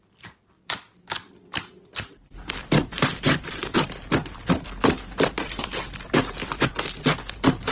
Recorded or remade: recorded